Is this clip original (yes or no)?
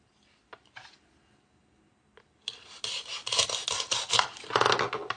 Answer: yes